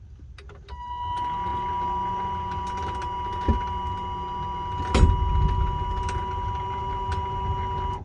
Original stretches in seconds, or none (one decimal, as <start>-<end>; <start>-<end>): 0.0-8.0